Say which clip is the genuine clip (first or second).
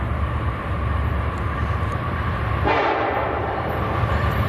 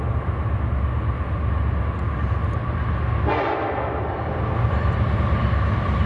second